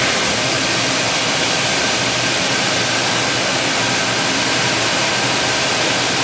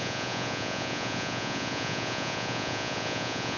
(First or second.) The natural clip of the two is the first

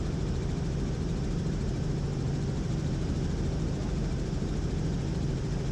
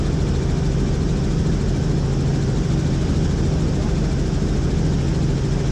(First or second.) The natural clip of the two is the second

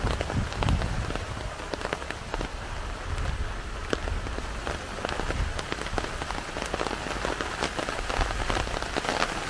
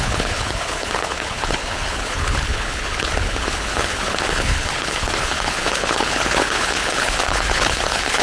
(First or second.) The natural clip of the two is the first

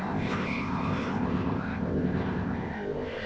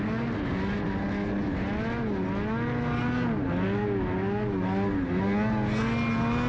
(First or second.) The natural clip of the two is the second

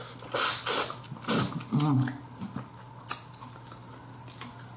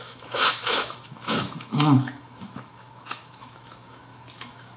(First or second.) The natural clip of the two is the first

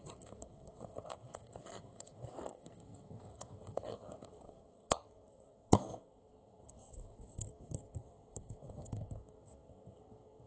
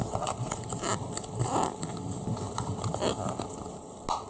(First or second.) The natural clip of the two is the second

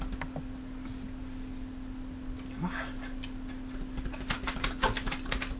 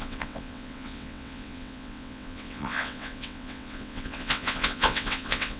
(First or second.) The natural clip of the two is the first